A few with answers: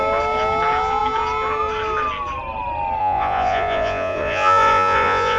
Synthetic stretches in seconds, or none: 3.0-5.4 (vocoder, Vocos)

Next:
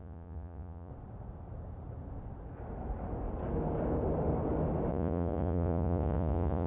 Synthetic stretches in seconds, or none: 0.0-0.9 (vocoder, Vocos); 4.9-6.7

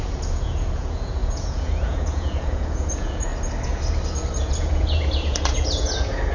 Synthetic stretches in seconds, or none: 0.0-3.3 (vocoder, Vocos); 4.4-6.3

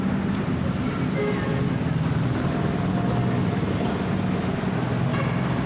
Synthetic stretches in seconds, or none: none

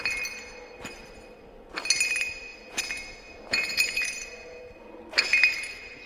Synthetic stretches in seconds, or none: 2.5-4.6 (vocoder, Vocos)

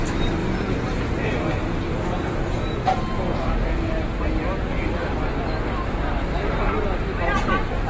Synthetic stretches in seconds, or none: 0.4-3.8 (vocoder, Vocos)